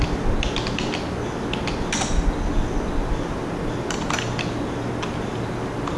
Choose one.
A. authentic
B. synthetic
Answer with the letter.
A